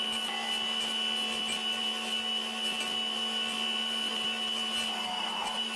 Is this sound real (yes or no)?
yes